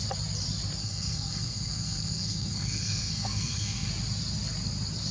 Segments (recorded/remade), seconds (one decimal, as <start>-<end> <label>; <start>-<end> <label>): 0.0-0.8 recorded; 0.8-3.9 remade; 3.9-5.1 recorded